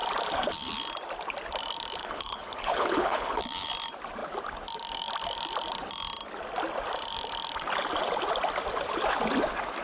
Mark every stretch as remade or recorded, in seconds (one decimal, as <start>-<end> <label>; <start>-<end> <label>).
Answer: 0.0-2.0 recorded; 2.0-3.4 remade; 3.4-9.8 recorded